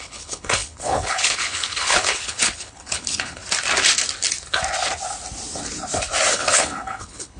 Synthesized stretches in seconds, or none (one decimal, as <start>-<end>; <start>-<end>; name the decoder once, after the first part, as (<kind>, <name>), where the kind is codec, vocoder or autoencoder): 0.0-3.4 (codec, HILCodec); 6.3-7.4